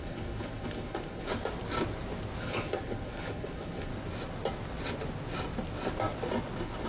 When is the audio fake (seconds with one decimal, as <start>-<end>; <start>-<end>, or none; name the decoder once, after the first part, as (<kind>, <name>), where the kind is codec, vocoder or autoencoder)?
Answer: 0.0-1.3 (codec, HILCodec); 2.4-3.9